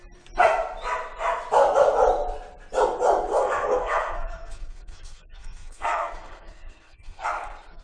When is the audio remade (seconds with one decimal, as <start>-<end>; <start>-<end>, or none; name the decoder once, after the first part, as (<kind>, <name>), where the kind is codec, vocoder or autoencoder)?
3.3-7.8 (codec, SNAC)